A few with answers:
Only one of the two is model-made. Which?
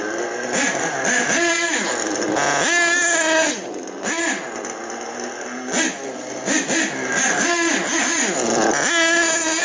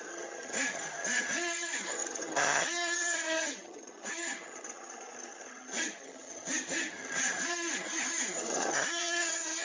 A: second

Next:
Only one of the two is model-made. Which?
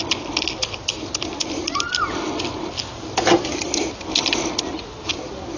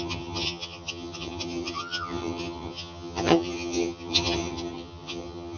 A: second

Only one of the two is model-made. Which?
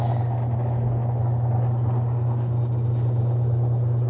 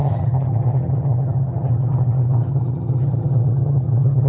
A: second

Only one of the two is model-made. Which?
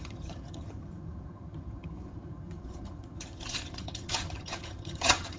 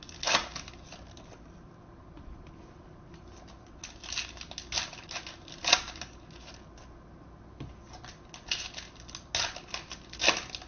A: first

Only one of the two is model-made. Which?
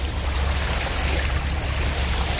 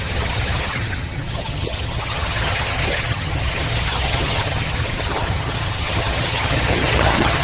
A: second